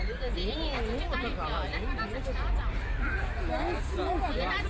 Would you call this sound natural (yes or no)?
yes